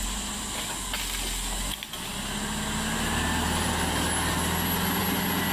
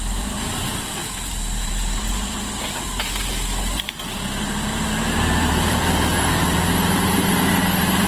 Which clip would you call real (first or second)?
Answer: first